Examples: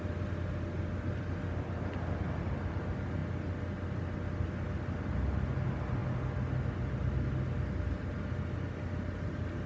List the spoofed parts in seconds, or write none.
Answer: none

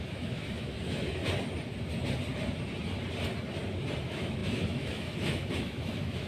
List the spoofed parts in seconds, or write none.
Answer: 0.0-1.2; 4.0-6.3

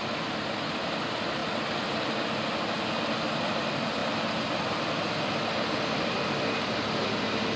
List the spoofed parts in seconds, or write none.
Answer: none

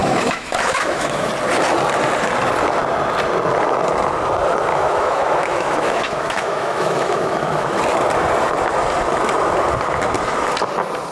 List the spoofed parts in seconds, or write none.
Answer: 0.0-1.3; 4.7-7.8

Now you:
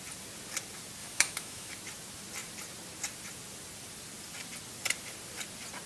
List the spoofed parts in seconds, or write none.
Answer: 1.0-1.7

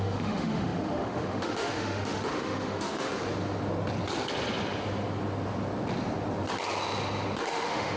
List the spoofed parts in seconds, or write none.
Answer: 0.0-3.1; 7.4-8.0